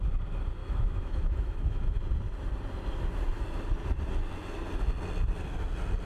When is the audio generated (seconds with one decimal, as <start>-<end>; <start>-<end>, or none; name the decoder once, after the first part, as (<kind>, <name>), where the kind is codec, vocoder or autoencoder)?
0.6-2.0 (autoencoder, DAC-VAE)